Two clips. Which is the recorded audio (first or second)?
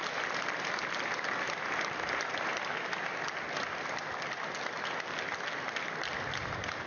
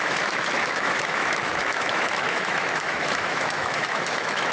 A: first